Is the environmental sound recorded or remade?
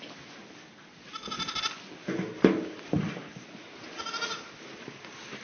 recorded